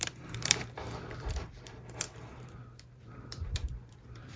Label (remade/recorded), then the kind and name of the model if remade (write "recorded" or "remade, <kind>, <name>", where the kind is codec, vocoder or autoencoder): remade, vocoder, BigVGAN v2